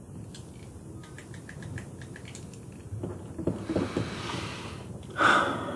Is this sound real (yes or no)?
yes